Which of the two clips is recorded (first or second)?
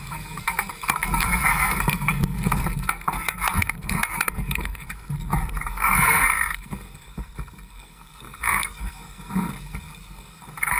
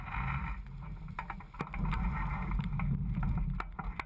second